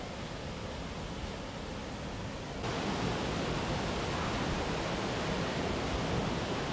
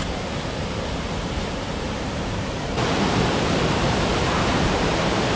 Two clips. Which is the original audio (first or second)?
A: first